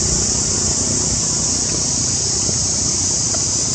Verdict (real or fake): real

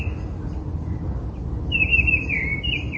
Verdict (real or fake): real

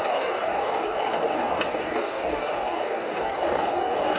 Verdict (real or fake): fake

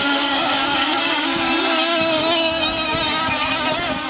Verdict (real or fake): fake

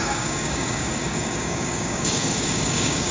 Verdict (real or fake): fake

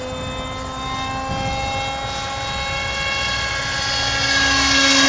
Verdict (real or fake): real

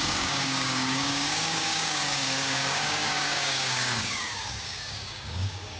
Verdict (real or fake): fake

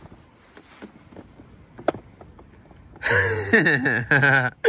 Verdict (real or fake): real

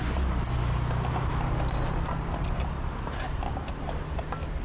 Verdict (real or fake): real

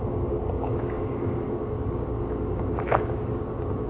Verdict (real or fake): fake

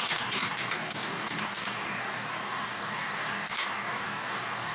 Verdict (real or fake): fake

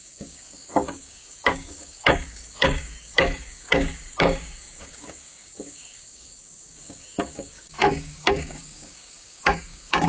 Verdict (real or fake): fake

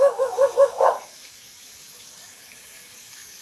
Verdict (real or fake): fake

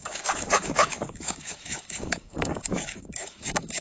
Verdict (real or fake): fake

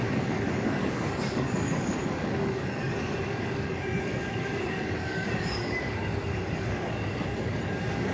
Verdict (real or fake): fake